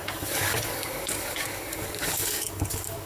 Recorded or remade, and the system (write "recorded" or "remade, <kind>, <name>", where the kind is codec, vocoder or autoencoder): remade, codec, DAC